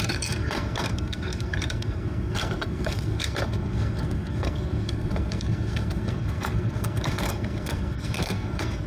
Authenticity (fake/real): fake